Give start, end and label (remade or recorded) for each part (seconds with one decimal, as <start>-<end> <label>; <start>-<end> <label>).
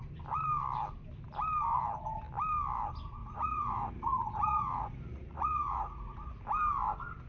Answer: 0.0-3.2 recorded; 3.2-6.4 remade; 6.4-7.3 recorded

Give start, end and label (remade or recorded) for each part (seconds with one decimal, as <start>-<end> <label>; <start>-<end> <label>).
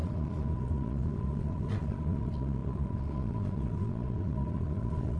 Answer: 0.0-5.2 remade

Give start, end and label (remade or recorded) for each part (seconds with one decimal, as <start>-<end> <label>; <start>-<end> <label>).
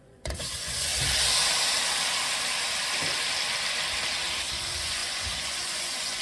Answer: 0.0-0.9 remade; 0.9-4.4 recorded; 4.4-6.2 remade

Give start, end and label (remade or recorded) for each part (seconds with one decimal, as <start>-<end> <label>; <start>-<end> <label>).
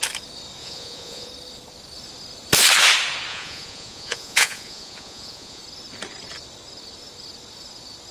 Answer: 0.0-0.6 recorded; 0.6-1.3 remade; 1.3-3.3 recorded; 3.3-5.6 remade; 5.6-8.1 recorded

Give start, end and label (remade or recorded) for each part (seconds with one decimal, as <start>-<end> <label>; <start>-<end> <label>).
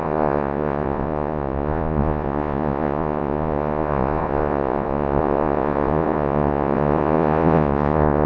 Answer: 0.0-8.3 remade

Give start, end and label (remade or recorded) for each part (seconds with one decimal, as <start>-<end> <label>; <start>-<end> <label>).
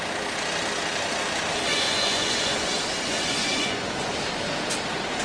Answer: 0.0-1.7 recorded; 1.7-4.1 remade; 4.1-5.2 recorded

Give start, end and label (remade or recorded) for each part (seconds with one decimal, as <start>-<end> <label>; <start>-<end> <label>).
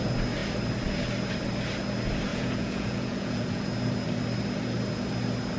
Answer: 0.0-2.3 recorded; 2.3-3.6 remade; 3.6-5.6 recorded